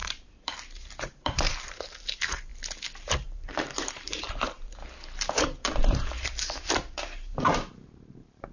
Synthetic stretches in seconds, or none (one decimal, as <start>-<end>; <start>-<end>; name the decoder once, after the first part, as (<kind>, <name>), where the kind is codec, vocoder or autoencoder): 0.0-2.5 (vocoder, BigVGAN v2); 3.1-4.8; 5.4-8.5